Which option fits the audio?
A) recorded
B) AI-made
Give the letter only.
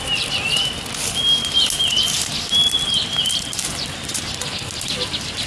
A